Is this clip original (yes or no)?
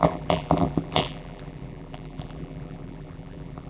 no